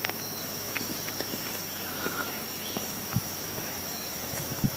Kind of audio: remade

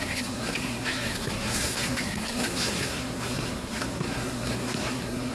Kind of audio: remade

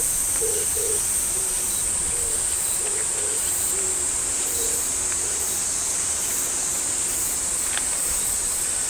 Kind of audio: remade